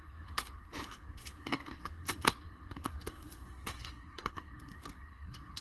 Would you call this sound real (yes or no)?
no